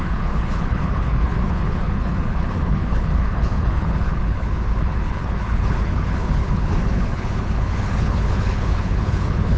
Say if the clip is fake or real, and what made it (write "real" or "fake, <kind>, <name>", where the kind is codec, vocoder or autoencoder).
fake, codec, HILCodec